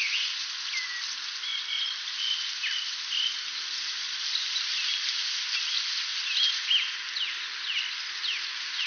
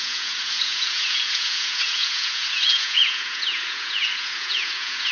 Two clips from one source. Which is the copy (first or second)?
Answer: second